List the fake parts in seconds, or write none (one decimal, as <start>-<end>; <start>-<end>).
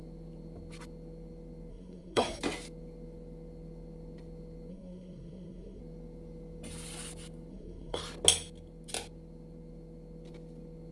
1.7-2.4; 4.7-5.8; 7.5-8.0